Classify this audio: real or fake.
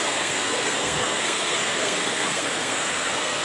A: fake